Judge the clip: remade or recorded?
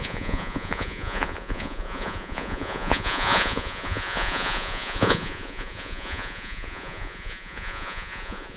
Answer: remade